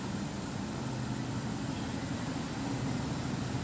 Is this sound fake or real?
real